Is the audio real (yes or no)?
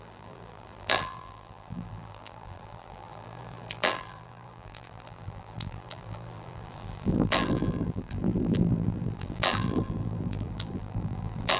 no